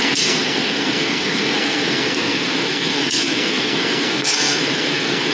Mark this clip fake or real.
fake